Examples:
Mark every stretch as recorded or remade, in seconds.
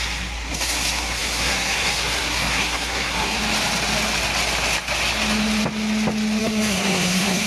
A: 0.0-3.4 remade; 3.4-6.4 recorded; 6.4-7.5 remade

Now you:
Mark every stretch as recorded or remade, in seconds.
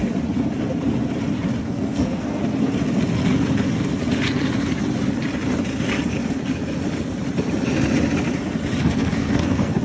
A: 0.0-1.6 recorded; 1.6-2.4 remade; 2.4-8.8 recorded; 8.8-9.8 remade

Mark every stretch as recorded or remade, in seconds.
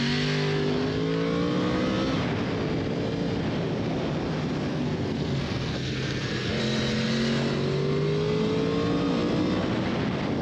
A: 0.0-4.7 recorded; 4.7-6.5 remade; 6.5-10.4 recorded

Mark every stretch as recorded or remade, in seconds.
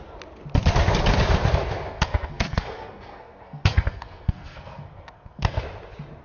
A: 0.0-1.9 recorded; 1.9-5.6 remade; 5.6-6.2 recorded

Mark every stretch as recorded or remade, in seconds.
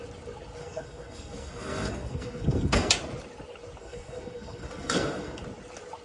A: 0.0-0.6 recorded; 0.6-2.9 remade; 2.9-3.8 recorded; 3.8-5.4 remade; 5.4-6.0 recorded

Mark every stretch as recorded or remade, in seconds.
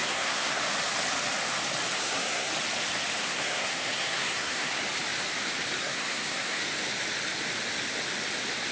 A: 0.0-0.6 remade; 0.6-2.0 recorded; 2.0-2.5 remade; 2.5-3.2 recorded; 3.2-4.7 remade; 4.7-5.8 recorded; 5.8-6.6 remade; 6.6-8.7 recorded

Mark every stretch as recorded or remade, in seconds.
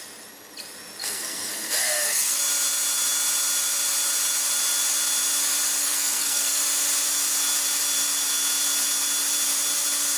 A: 0.0-1.0 recorded; 1.0-2.4 remade; 2.4-5.8 recorded; 5.8-6.6 remade; 6.6-10.2 recorded